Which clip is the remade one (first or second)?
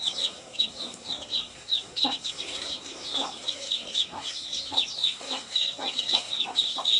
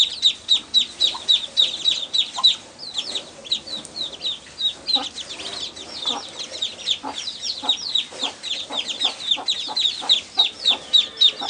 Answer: first